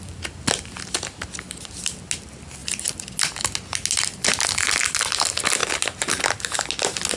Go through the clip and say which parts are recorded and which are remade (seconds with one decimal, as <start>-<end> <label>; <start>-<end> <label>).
0.0-7.2 recorded